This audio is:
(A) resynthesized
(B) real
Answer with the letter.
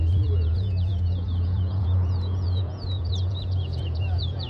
A